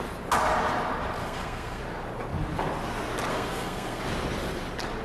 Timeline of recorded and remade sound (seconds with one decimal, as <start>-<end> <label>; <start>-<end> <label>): 0.0-1.2 recorded; 1.2-1.8 remade; 1.8-3.3 recorded; 3.3-4.0 remade; 4.0-5.0 recorded